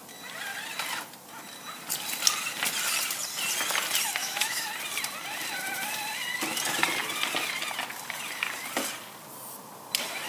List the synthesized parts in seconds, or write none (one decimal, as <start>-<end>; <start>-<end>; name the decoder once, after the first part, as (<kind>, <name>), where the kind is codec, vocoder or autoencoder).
4.2-4.7 (autoencoder, DAC-VAE)